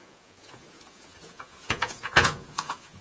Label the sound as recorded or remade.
remade